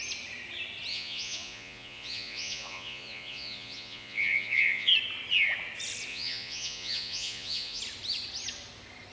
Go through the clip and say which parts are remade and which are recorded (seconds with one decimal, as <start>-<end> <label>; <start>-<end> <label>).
0.0-0.9 recorded; 0.9-4.9 remade; 4.9-6.1 recorded; 6.1-7.8 remade; 7.8-9.1 recorded